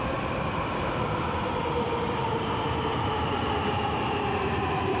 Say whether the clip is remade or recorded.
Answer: remade